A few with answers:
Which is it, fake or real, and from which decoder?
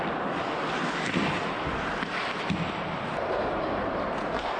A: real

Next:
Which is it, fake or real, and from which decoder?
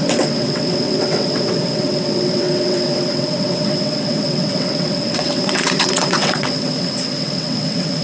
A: fake, vocoder, WaveNeXt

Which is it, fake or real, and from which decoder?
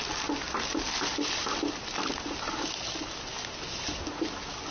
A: real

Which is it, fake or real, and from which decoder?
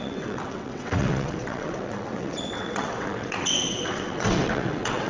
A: fake, vocoder, WaveNeXt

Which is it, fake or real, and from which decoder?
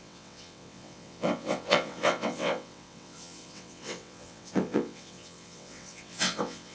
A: fake, vocoder, WaveNeXt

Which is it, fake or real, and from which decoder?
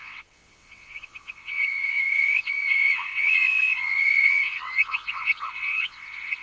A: fake, vocoder, WaveNeXt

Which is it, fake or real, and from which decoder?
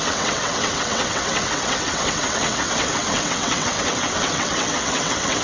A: fake, vocoder, WaveNeXt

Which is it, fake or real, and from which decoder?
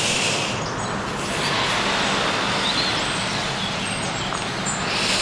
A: real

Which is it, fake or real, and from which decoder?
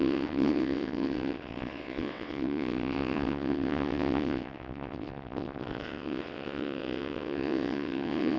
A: fake, vocoder, WaveNeXt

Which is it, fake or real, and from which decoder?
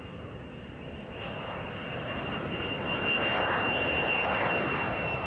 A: real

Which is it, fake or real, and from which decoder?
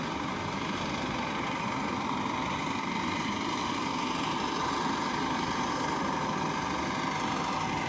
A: real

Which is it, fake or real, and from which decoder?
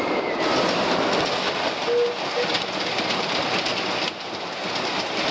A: real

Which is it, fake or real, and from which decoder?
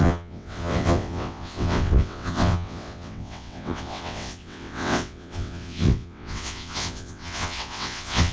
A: fake, vocoder, WaveNeXt